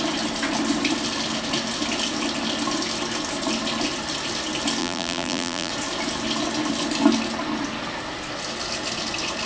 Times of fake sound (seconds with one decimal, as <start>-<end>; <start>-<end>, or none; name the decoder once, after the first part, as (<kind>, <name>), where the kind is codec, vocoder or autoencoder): 4.8-5.7 (vocoder, BigVGAN v2)